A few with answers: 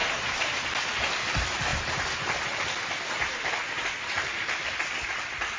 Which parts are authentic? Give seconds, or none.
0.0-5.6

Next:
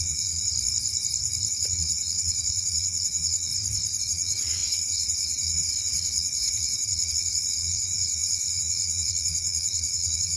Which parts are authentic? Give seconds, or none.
0.5-1.5; 3.5-4.0